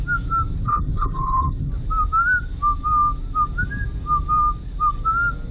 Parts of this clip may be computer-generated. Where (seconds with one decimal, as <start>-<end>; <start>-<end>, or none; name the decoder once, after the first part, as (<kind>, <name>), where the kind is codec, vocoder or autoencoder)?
0.6-1.7 (codec, HILCodec)